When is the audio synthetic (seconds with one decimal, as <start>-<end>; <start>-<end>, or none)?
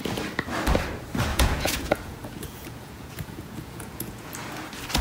1.3-4.3